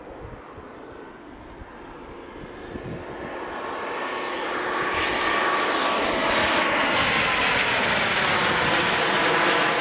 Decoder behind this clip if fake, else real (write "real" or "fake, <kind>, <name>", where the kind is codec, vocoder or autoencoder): real